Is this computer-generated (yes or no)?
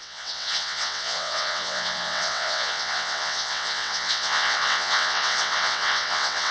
yes